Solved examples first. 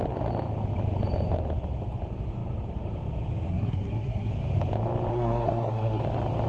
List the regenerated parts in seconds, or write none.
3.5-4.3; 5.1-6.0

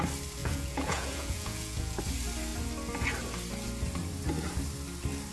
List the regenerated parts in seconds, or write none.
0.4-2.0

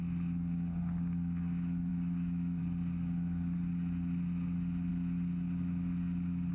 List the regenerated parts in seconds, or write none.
1.9-2.6

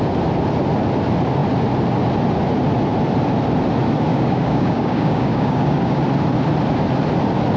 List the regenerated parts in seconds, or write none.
4.1-6.0

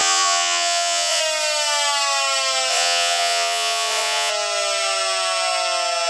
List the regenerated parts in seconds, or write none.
0.0-1.2; 2.7-4.3

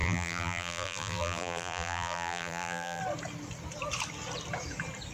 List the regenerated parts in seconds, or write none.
0.0-3.0

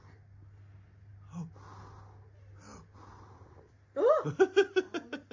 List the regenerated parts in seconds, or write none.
none